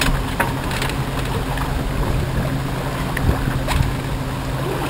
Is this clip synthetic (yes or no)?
no